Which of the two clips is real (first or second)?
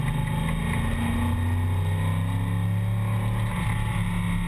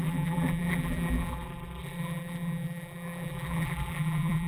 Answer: first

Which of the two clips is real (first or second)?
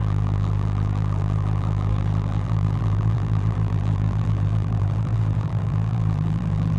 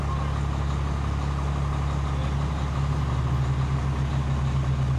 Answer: second